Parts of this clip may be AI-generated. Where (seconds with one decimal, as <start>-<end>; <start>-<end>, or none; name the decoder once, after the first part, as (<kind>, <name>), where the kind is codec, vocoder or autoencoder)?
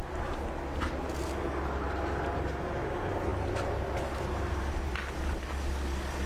none